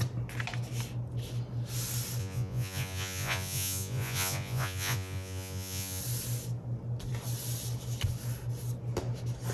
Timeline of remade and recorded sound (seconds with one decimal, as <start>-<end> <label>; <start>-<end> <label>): 0.0-2.2 recorded; 2.2-6.0 remade; 6.0-9.5 recorded